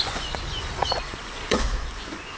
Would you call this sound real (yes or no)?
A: no